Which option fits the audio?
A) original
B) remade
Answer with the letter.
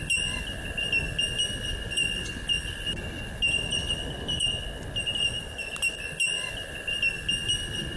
A